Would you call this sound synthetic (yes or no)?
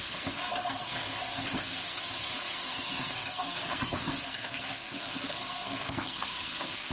yes